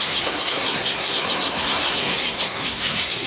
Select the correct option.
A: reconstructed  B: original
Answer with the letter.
A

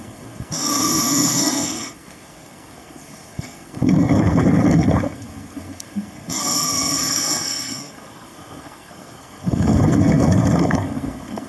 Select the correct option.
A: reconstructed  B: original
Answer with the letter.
A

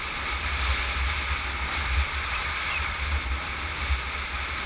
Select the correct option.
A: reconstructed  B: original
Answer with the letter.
B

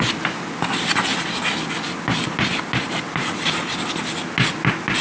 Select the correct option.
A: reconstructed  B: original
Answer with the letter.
B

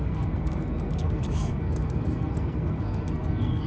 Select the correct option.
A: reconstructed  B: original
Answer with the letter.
A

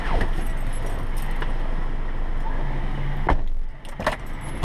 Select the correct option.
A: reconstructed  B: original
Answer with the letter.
B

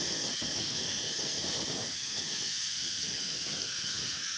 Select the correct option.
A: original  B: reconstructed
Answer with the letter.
B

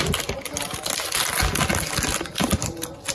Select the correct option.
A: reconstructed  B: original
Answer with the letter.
B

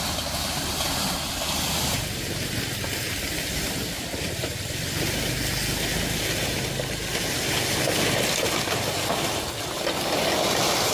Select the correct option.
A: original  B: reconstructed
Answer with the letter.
A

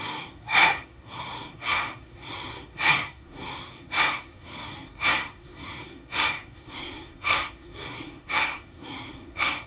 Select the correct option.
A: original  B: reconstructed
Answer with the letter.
B